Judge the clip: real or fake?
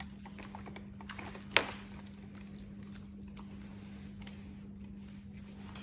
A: real